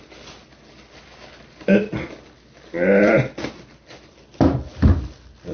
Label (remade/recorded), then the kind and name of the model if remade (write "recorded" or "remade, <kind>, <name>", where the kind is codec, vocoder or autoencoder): recorded